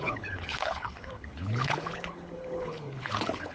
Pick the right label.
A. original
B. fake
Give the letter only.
B